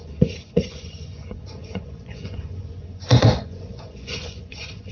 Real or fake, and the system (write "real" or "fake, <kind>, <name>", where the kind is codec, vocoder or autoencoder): fake, vocoder, Vocos